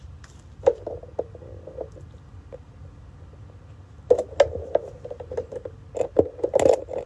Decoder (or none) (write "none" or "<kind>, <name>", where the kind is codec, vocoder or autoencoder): none